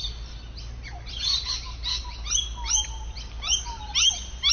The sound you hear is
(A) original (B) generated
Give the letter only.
A